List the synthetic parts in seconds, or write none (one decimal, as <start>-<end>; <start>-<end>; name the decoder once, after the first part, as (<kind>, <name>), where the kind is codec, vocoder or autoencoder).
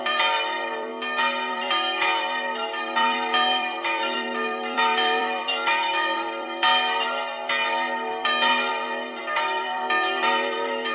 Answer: 0.0-0.9 (vocoder, BigVGAN v2); 1.5-10.9